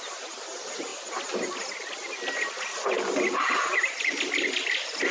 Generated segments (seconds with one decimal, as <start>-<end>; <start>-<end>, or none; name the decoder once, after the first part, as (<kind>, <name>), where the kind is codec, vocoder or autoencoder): none